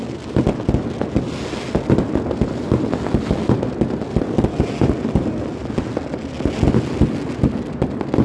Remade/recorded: recorded